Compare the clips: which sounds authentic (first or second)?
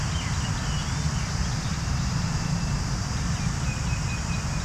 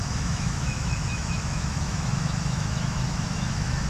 first